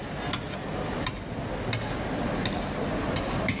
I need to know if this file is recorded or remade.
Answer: recorded